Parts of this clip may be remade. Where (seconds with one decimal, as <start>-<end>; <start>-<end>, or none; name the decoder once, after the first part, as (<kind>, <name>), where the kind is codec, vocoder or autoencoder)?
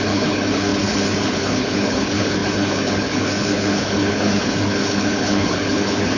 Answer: 0.0-6.2 (codec, HILCodec)